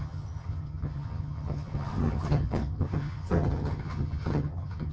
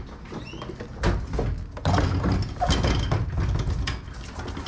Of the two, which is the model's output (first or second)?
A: first